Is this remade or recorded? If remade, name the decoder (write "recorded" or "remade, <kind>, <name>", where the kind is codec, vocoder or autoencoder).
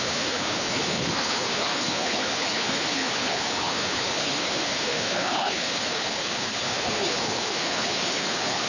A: remade, codec, HILCodec